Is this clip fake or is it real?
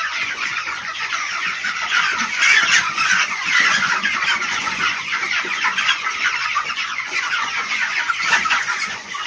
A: fake